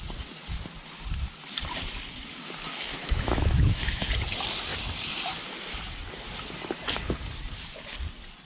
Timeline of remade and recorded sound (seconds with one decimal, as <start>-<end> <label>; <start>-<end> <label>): 0.0-2.9 recorded; 2.9-4.1 remade; 4.1-8.4 recorded